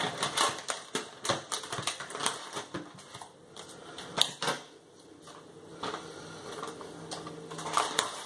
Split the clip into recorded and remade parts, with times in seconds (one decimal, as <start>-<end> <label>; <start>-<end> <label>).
0.0-8.3 recorded